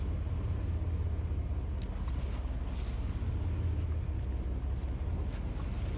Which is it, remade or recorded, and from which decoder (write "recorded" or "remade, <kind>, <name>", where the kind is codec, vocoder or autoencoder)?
recorded